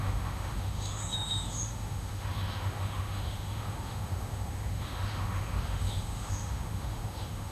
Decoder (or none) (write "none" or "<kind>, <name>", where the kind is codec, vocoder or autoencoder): autoencoder, DAC-VAE